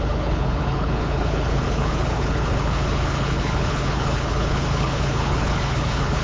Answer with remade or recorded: remade